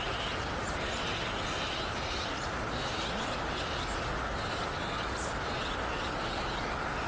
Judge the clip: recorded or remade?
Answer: recorded